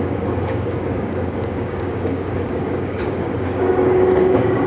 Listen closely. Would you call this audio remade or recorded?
remade